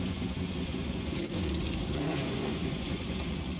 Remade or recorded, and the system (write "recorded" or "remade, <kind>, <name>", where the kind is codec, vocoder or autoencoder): remade, vocoder, Vocos